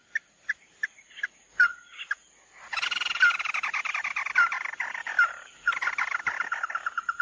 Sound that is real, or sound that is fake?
real